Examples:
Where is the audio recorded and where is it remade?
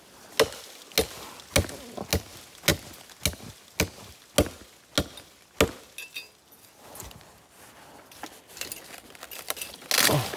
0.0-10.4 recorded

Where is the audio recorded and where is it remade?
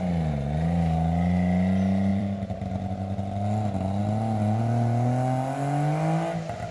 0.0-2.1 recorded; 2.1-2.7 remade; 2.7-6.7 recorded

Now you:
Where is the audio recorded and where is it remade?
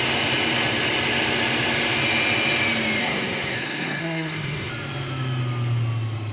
0.0-3.0 recorded; 3.0-4.7 remade; 4.7-6.3 recorded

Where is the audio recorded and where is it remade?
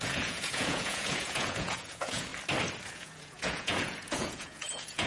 0.0-2.3 remade; 2.3-2.9 recorded; 2.9-5.1 remade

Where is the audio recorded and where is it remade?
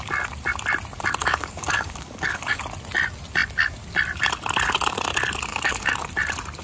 0.0-1.2 recorded; 1.2-2.6 remade; 2.6-5.5 recorded; 5.5-6.1 remade; 6.1-6.6 recorded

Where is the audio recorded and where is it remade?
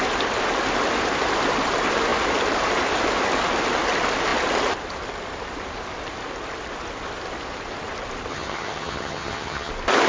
0.0-8.3 recorded; 8.3-9.7 remade; 9.7-10.1 recorded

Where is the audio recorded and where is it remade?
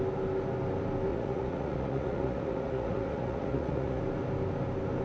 0.0-1.1 recorded; 1.1-4.0 remade; 4.0-5.0 recorded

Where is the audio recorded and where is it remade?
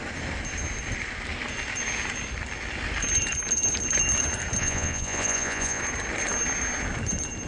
0.0-4.6 recorded; 4.6-5.8 remade; 5.8-7.5 recorded